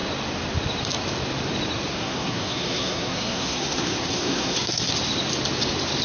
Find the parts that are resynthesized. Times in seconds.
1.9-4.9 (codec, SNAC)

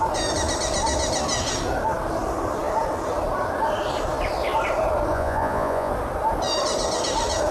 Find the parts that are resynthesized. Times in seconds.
5.1-5.9 (vocoder, Vocos)

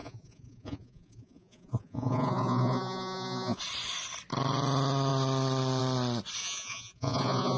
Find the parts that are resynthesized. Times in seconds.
0.0-3.6 (vocoder, Vocos); 6.4-7.6

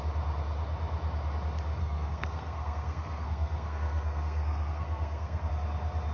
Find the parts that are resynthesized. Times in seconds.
1.8-5.5 (codec, SNAC)

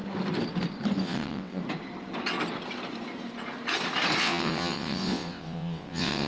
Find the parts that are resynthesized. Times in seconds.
1.0-1.6 (vocoder, WaveNeXt); 4.2-6.3

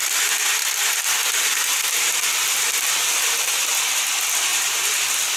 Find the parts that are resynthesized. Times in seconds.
0.6-3.8 (vocoder, BigVGAN v2); 4.5-5.4

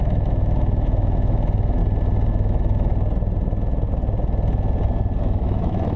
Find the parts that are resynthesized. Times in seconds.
0.0-1.8 (autoencoder, DAC-VAE); 2.3-2.9; 5.2-6.0

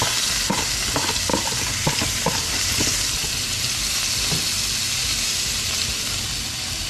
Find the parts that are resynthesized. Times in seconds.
1.3-4.0 (vocoder, BigVGAN v2); 5.0-5.9